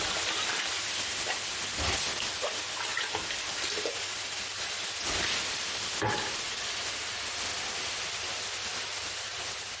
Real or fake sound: real